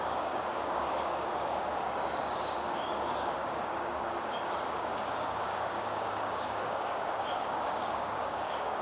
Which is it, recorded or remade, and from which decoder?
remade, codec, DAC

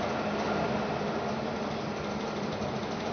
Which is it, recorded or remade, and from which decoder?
recorded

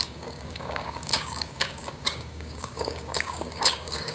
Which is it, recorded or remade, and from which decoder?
remade, codec, DAC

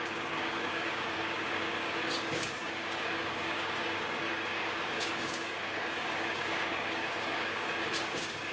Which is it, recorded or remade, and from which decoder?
remade, codec, DAC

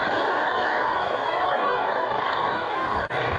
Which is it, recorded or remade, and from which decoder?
remade, codec, DAC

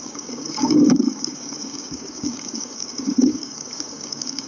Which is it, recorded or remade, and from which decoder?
remade, codec, DAC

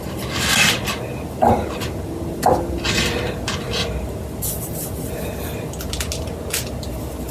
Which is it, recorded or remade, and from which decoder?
recorded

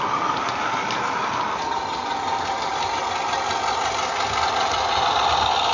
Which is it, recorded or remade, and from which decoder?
recorded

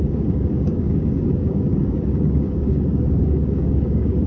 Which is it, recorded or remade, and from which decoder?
remade, codec, DAC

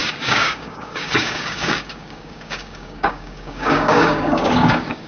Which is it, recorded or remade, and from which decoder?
remade, codec, DAC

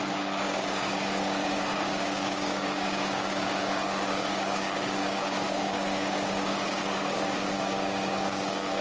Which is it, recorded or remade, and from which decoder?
remade, codec, DAC